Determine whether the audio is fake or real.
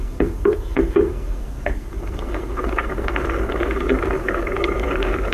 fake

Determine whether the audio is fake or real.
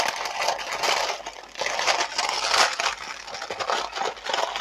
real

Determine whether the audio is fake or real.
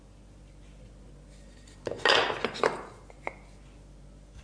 real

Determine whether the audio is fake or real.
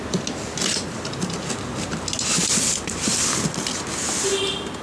real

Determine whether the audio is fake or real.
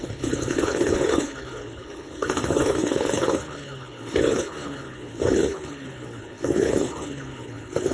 fake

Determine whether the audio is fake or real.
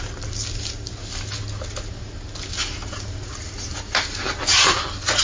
real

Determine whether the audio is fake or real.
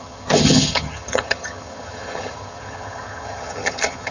fake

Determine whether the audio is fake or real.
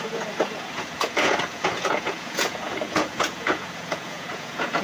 fake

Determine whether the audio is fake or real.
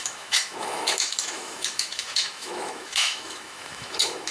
fake